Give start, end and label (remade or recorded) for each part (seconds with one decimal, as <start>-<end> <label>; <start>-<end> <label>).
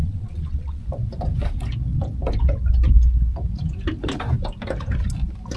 0.0-0.8 remade; 0.8-5.6 recorded